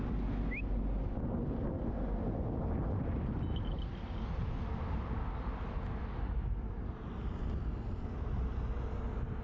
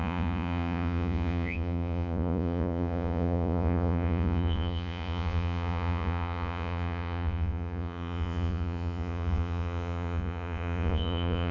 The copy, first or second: second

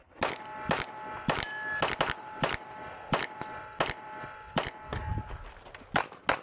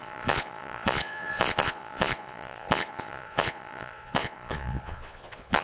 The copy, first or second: second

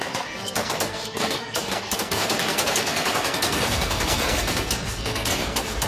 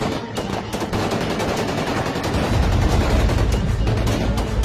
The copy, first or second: first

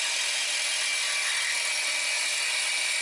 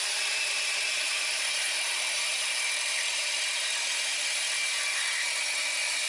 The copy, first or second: second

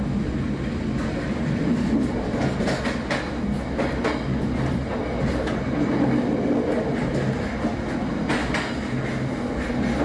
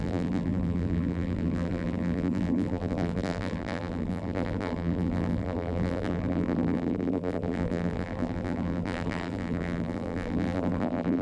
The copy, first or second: second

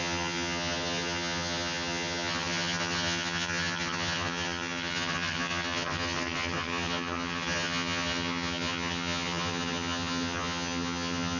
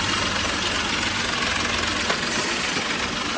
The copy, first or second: first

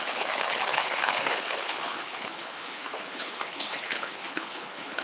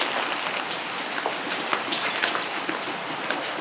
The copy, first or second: first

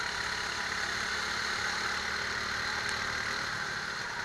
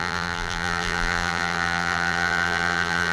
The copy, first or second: second